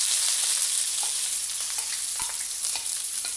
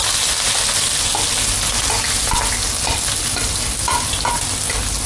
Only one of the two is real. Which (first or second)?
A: second